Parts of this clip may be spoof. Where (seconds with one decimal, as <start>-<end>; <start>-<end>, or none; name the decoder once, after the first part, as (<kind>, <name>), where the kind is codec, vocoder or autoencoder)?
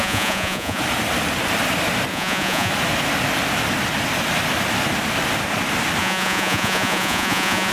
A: 0.0-0.8 (vocoder, Vocos); 2.1-2.7; 6.0-7.7